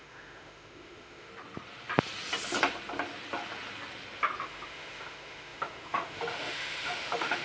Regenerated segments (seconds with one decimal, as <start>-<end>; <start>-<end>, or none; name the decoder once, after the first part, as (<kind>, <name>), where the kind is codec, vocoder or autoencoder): 0.0-1.3 (autoencoder, DAC-VAE); 4.4-7.4